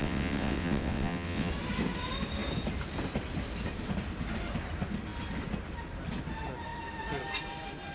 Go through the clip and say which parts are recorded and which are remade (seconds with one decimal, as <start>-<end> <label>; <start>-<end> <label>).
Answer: 0.0-1.5 remade; 1.5-7.9 recorded